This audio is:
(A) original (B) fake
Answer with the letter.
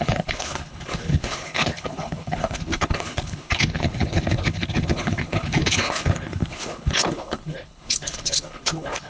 B